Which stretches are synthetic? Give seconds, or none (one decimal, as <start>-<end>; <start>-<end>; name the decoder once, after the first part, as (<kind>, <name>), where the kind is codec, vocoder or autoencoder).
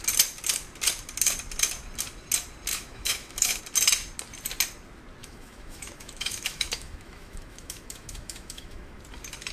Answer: 2.7-3.6 (autoencoder, DAC-VAE); 5.2-9.0